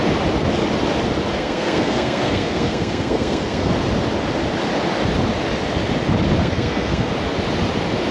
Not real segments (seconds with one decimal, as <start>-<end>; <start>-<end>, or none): 1.3-3.7; 6.4-7.1